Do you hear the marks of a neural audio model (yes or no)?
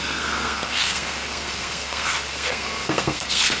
yes